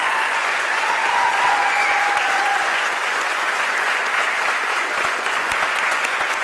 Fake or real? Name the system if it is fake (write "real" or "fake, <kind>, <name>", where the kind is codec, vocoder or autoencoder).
fake, vocoder, Vocos